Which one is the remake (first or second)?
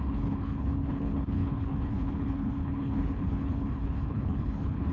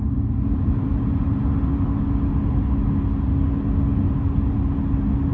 first